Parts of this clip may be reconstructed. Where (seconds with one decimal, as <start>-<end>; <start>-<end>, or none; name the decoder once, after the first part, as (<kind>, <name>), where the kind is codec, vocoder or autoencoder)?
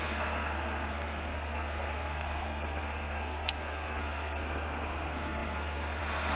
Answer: 0.0-6.4 (codec, SNAC)